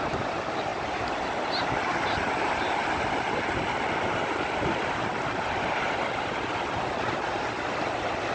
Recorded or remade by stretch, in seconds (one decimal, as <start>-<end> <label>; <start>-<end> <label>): 0.0-8.3 recorded